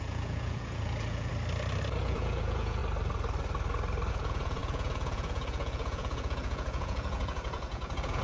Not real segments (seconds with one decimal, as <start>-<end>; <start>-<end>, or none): 0.0-1.3; 2.0-2.8; 4.1-8.2